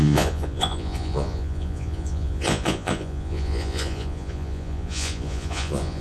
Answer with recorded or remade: remade